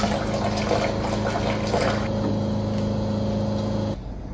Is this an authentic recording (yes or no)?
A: yes